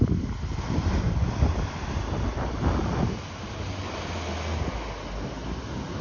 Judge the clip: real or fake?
real